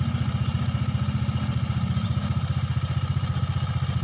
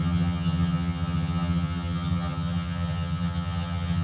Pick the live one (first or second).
first